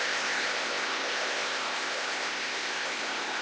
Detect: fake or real fake